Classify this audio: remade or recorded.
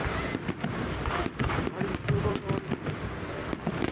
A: remade